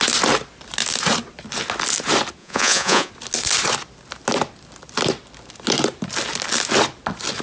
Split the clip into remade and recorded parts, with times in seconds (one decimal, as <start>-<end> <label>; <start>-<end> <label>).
0.0-2.4 recorded; 2.4-3.1 remade; 3.1-7.4 recorded